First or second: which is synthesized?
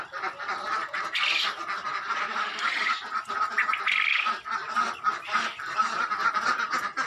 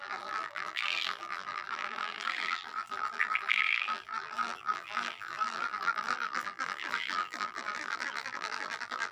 second